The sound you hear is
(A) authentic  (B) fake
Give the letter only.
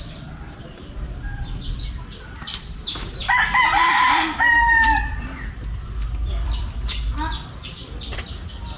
B